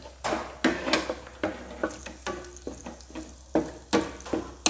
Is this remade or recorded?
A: recorded